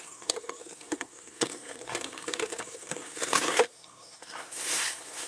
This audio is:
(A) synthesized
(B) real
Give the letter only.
A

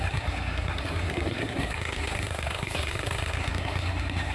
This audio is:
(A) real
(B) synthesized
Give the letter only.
B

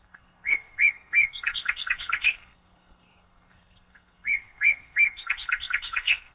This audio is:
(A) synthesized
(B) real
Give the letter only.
A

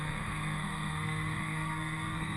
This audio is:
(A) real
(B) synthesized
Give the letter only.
B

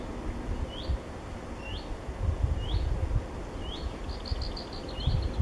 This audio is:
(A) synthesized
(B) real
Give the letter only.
B